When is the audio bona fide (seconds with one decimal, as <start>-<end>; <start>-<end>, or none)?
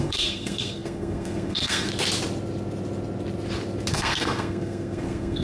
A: 1.9-3.9